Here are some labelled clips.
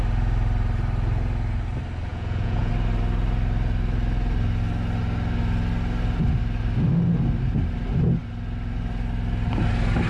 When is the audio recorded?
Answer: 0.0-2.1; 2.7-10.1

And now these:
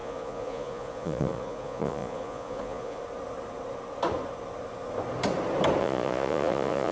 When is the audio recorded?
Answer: 3.0-5.8

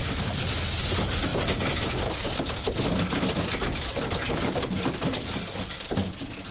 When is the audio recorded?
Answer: 0.0-6.5